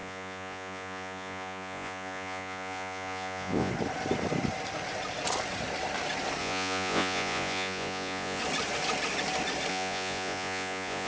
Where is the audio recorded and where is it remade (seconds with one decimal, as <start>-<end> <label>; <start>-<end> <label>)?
0.0-3.7 remade; 3.7-6.4 recorded; 6.4-8.4 remade; 8.4-9.7 recorded; 9.7-11.1 remade